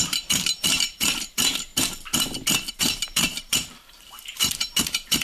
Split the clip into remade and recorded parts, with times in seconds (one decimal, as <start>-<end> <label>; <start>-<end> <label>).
0.0-1.7 remade; 1.7-2.7 recorded; 2.7-5.2 remade